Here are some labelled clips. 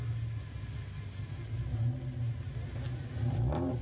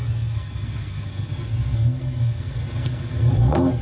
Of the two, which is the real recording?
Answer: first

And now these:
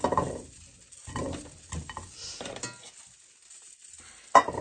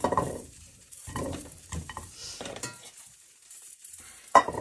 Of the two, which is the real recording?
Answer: first